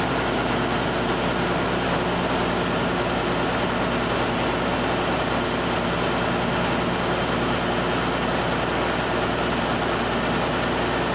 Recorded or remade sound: recorded